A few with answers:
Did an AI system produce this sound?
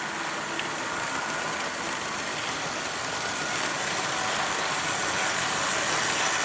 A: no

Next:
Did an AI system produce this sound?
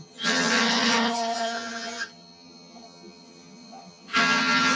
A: yes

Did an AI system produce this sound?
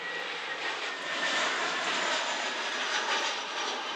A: no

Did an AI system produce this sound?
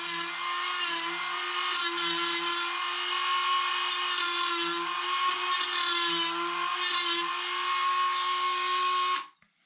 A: no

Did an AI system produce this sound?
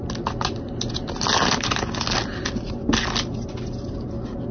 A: no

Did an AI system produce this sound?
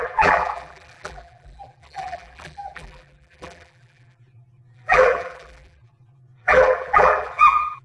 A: yes